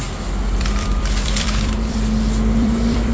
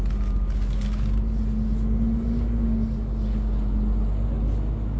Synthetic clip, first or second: first